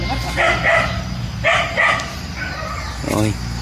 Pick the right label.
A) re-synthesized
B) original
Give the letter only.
B